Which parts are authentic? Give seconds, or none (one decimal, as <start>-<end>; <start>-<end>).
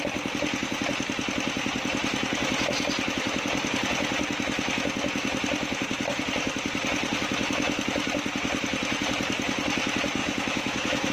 0.0-10.2